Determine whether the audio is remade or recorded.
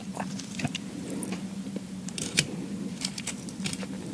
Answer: remade